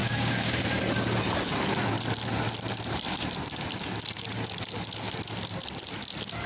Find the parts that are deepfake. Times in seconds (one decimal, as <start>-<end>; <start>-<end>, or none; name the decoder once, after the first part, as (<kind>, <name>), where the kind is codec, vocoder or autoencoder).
0.0-0.6 (codec, DAC)